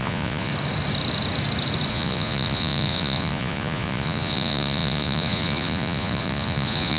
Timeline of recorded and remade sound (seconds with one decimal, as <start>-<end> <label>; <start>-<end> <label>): 0.0-0.5 remade; 0.5-1.9 recorded; 1.9-7.0 remade